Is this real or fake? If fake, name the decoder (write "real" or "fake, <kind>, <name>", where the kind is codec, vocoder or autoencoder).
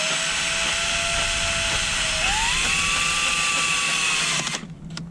real